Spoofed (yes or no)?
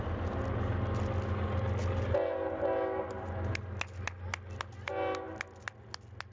no